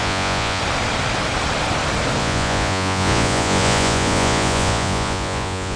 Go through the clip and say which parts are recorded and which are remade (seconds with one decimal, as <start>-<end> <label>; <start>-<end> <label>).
0.0-0.6 remade; 0.6-2.2 recorded; 2.2-5.8 remade